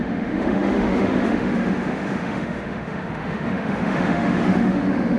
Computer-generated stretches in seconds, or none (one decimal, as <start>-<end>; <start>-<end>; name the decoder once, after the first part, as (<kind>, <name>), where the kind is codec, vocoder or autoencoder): 0.0-5.2 (autoencoder, DAC-VAE)